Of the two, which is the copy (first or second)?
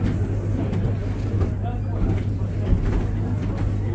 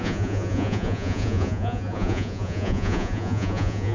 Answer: second